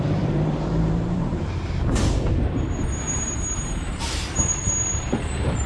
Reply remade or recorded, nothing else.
remade